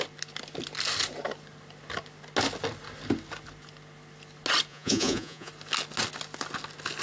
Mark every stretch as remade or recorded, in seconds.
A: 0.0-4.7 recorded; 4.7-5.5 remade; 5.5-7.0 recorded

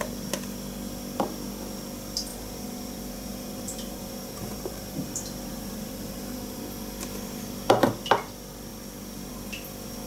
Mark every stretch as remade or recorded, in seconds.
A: 0.0-2.3 recorded; 2.3-6.6 remade; 6.6-10.1 recorded

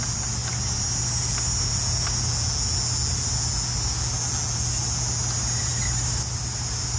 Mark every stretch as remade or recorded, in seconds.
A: 0.0-7.0 recorded

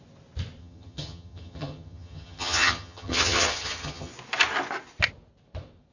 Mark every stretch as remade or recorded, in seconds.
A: 0.0-0.6 recorded; 0.6-4.1 remade; 4.1-5.9 recorded

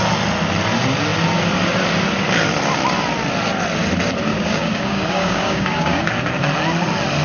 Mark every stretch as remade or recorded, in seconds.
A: 0.0-4.3 recorded; 4.3-6.0 remade; 6.0-7.2 recorded

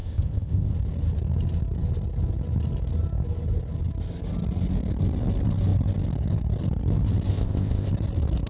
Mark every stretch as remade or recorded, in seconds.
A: 0.0-0.7 remade; 0.7-7.3 recorded; 7.3-7.9 remade; 7.9-8.5 recorded

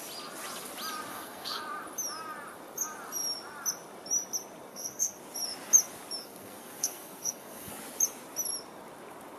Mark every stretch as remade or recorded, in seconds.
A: 0.0-1.1 recorded; 1.1-1.6 remade; 1.6-4.7 recorded; 4.7-5.2 remade; 5.2-6.2 recorded; 6.2-7.7 remade; 7.7-9.4 recorded